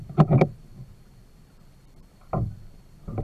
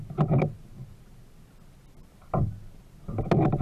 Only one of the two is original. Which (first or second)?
second